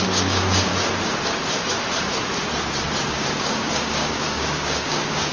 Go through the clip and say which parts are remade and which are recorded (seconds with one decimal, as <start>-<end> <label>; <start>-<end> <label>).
0.0-0.7 remade; 0.7-3.1 recorded; 3.1-5.3 remade